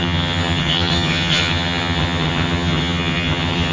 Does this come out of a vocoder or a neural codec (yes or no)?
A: yes